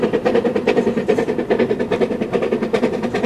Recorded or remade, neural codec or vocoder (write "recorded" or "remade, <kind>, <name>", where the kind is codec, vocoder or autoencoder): recorded